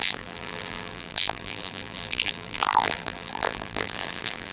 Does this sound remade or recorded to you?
remade